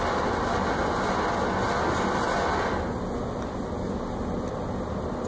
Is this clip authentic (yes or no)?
yes